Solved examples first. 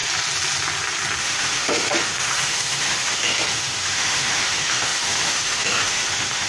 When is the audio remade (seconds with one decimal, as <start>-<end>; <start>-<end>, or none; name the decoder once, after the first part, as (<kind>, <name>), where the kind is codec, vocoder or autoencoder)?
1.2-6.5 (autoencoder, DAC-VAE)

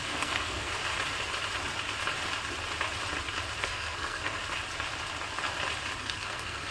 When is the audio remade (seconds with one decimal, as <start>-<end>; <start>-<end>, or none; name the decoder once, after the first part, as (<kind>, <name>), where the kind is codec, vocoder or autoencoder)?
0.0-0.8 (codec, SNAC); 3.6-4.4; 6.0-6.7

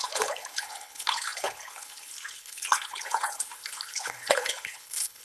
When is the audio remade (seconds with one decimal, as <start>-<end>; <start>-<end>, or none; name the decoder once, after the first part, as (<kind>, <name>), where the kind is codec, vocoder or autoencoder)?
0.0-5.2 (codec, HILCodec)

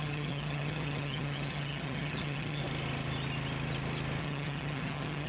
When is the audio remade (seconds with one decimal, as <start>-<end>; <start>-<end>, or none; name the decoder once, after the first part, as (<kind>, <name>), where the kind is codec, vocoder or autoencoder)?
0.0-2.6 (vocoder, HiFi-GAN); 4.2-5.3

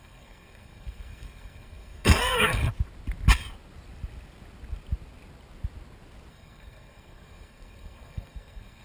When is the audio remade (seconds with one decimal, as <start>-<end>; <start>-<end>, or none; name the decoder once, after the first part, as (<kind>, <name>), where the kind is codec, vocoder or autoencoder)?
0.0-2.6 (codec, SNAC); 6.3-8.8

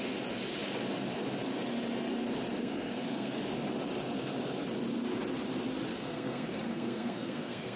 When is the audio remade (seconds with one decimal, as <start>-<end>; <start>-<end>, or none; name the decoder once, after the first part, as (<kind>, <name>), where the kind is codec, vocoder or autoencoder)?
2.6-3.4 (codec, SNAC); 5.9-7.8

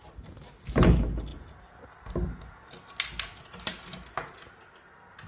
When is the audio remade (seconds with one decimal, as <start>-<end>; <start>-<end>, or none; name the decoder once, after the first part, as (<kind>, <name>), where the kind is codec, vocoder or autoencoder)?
none

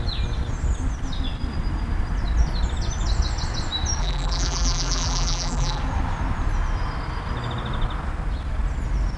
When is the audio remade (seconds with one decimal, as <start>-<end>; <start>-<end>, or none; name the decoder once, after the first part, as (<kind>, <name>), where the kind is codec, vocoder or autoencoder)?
4.0-5.8 (vocoder, BigVGAN v2)